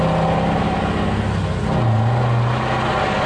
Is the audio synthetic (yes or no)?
no